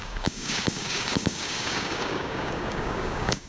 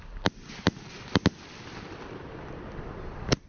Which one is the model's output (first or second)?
first